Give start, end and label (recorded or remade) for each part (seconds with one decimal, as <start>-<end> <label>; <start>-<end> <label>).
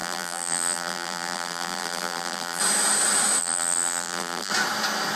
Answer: 0.0-2.6 remade; 2.6-3.4 recorded; 3.4-4.5 remade; 4.5-5.2 recorded